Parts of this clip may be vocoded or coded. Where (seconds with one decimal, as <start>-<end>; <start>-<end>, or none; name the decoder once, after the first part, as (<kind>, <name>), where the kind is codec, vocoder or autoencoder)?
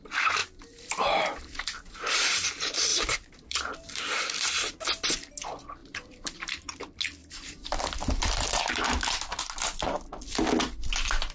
0.4-2.1 (vocoder, BigVGAN v2); 2.9-4.2; 5.8-6.8; 7.2-7.8